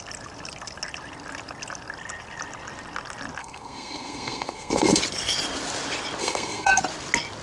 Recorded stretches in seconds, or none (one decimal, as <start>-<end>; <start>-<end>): 0.0-3.4; 5.0-6.2; 6.8-7.4